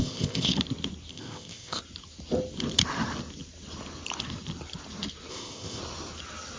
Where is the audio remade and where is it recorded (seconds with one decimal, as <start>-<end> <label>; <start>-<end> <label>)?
0.0-0.5 remade; 0.5-1.1 recorded; 1.1-1.8 remade; 1.8-5.3 recorded; 5.3-5.8 remade; 5.8-6.6 recorded